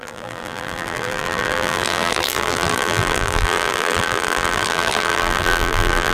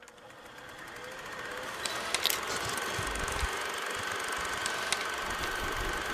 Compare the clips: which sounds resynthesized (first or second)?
first